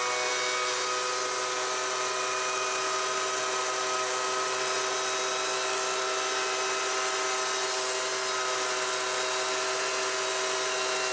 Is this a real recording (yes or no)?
yes